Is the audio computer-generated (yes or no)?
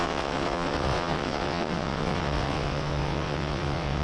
yes